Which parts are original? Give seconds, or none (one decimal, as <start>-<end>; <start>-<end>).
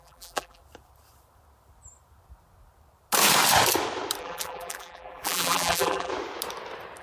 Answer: 0.6-4.2; 6.1-7.0